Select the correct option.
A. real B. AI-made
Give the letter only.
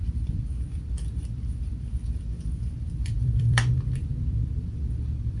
B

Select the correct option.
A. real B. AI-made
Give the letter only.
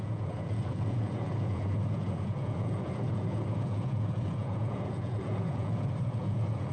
B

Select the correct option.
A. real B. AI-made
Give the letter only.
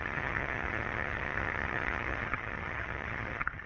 B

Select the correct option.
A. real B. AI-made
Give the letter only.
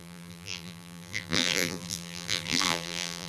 B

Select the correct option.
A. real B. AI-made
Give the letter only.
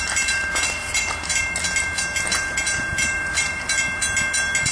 A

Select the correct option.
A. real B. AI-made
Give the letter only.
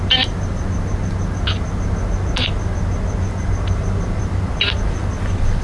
A